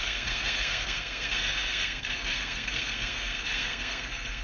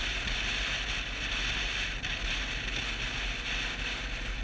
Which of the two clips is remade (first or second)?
first